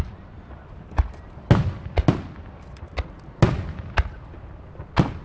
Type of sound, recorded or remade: recorded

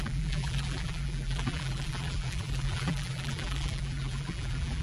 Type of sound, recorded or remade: remade